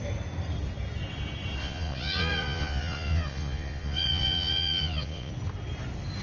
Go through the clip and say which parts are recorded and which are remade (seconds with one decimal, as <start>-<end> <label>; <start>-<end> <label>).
0.0-1.6 recorded; 1.6-5.3 remade; 5.3-6.2 recorded